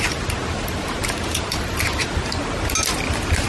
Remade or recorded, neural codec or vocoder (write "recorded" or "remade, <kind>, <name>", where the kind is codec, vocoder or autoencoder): recorded